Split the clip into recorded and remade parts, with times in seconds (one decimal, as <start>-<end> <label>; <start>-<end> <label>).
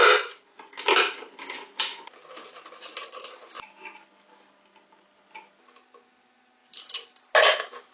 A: 0.0-6.6 recorded; 6.6-7.3 remade; 7.3-7.9 recorded